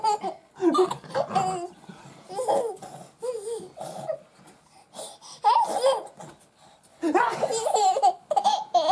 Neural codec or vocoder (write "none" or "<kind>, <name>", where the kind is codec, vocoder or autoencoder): none